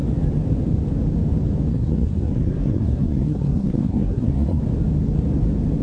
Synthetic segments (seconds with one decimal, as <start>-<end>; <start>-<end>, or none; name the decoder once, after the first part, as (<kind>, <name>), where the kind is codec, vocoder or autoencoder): 1.7-4.6 (codec, SNAC)